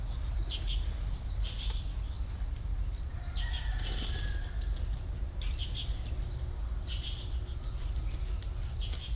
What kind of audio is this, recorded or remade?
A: recorded